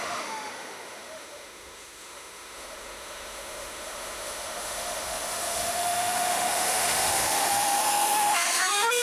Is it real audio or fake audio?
fake